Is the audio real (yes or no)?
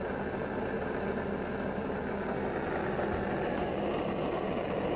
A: yes